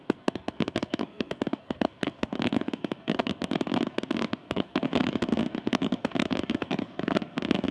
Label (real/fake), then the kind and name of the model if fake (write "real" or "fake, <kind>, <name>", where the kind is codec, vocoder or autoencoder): fake, codec, SNAC